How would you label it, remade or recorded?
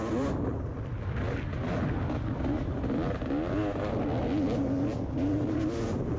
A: recorded